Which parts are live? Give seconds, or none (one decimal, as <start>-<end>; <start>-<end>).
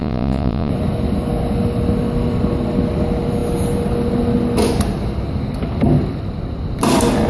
0.7-7.3